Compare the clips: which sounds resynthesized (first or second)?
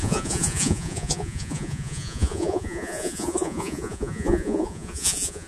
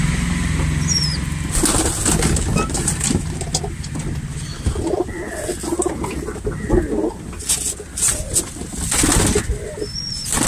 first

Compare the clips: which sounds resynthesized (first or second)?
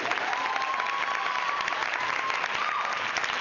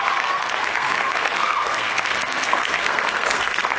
second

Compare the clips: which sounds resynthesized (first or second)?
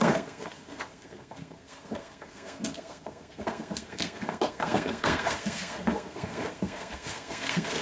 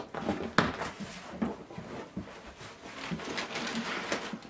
first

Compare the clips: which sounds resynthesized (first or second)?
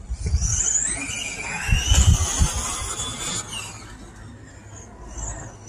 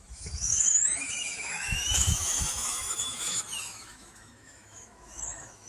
second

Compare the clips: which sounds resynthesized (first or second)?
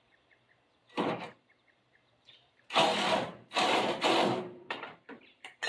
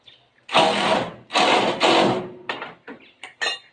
first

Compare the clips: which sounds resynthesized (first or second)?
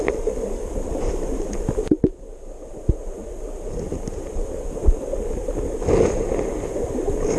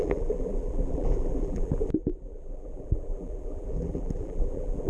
second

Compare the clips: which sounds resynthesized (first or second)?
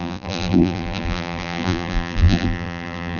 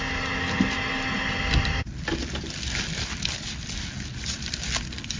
first